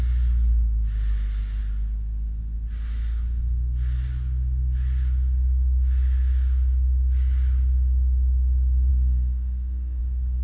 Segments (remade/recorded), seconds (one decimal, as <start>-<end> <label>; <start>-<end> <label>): 0.0-8.9 recorded; 8.9-10.0 remade; 10.0-10.4 recorded